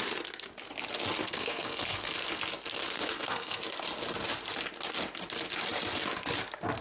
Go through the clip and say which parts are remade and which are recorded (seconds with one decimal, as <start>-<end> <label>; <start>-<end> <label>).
0.0-1.2 recorded; 1.2-2.1 remade; 2.1-2.7 recorded; 2.7-3.6 remade; 3.6-6.8 recorded